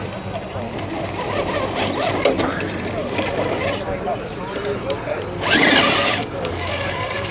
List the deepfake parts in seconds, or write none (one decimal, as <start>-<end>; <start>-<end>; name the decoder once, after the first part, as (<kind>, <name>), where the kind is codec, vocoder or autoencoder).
3.0-3.6 (codec, DAC); 6.1-7.3